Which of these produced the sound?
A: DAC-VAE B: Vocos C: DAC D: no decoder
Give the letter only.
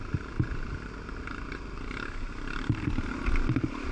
D